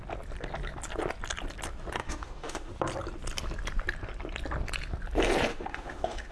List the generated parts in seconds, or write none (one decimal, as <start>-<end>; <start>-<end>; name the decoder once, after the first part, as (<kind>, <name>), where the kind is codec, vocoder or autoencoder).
2.0-2.7 (autoencoder, DAC-VAE); 5.5-6.3